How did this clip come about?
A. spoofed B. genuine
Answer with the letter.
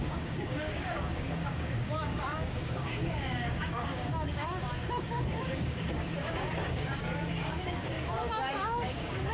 A